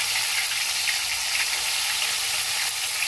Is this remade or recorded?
recorded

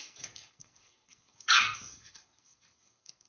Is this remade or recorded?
remade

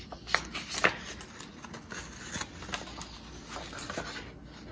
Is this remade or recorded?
recorded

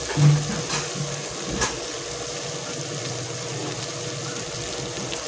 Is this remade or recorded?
recorded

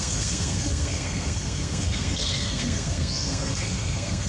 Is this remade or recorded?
remade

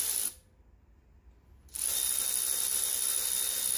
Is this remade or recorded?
recorded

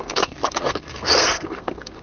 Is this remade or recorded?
remade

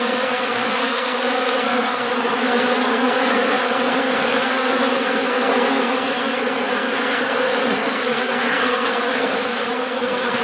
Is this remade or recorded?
remade